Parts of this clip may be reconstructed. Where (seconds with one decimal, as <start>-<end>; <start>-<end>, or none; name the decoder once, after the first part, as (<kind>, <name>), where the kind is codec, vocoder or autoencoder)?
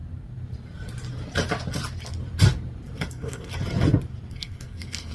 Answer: 3.1-3.5 (codec, SNAC); 4.3-5.1